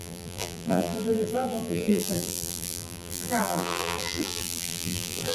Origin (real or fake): fake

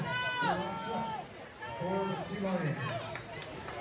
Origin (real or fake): real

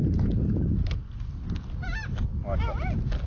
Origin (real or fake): real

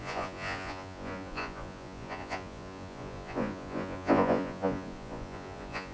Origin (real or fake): fake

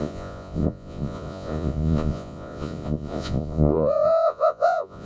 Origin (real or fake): fake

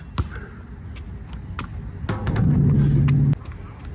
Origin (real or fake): real